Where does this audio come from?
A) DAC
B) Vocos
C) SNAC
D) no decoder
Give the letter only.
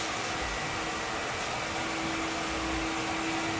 D